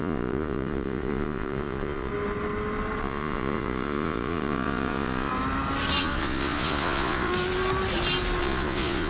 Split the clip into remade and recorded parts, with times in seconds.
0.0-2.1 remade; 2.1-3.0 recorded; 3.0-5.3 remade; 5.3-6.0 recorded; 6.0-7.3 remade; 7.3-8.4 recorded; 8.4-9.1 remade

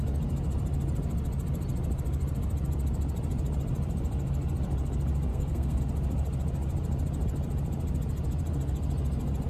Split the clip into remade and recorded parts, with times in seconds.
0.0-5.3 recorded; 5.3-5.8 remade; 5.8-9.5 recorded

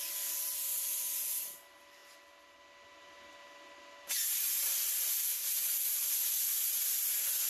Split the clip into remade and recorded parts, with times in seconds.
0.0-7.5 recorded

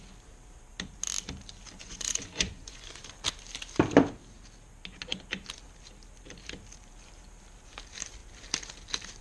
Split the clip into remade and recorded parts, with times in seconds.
0.0-1.8 recorded; 1.8-3.0 remade; 3.0-9.2 recorded

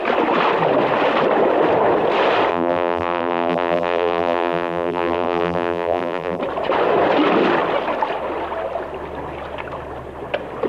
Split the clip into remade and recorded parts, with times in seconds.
0.0-2.5 recorded; 2.5-6.4 remade; 6.4-10.7 recorded

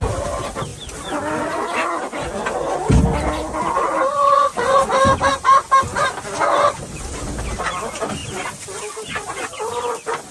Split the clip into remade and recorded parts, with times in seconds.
0.0-4.2 recorded; 4.2-4.8 remade; 4.8-10.3 recorded

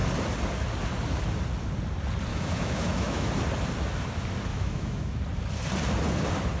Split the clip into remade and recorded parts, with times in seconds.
0.0-2.3 recorded; 2.3-3.3 remade; 3.3-4.5 recorded; 4.5-5.2 remade; 5.2-6.6 recorded